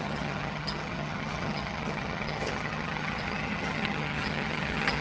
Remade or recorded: remade